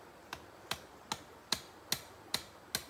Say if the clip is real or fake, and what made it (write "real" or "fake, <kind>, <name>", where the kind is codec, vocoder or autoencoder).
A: real